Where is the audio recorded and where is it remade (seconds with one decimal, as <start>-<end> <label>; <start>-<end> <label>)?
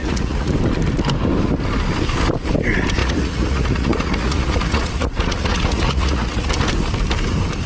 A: 0.0-0.5 remade; 0.5-3.0 recorded; 3.0-6.5 remade; 6.5-7.7 recorded